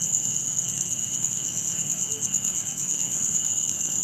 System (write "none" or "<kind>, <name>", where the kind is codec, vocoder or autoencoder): codec, SNAC